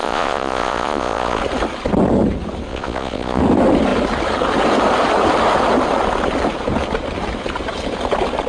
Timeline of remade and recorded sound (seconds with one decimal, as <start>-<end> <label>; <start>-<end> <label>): 0.0-1.4 remade; 1.4-2.7 recorded; 2.7-3.4 remade; 3.4-8.5 recorded